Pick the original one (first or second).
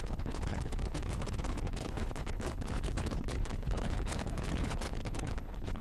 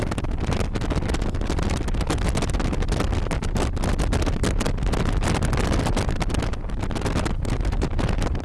second